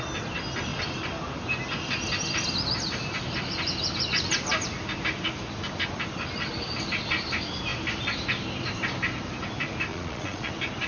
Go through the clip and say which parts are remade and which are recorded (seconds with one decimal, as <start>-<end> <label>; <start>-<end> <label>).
0.0-9.9 recorded; 9.9-10.5 remade; 10.5-10.9 recorded